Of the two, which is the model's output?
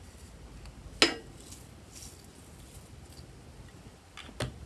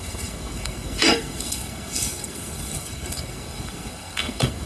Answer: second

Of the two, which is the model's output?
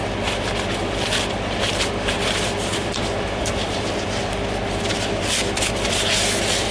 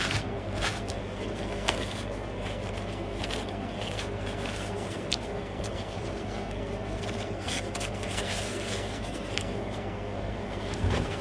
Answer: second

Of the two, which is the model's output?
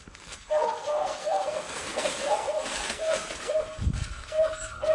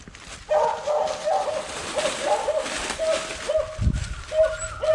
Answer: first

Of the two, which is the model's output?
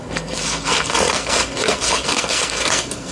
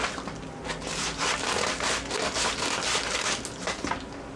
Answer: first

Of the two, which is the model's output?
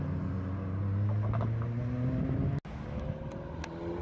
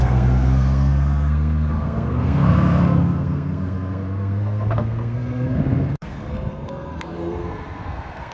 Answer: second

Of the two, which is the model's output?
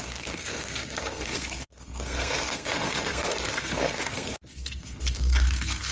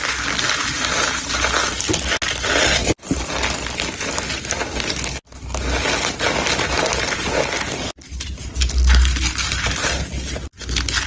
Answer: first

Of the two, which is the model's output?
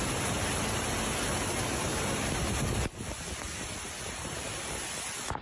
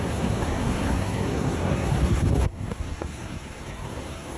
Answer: second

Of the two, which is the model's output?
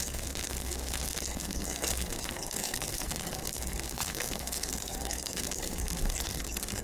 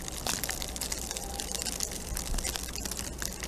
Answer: first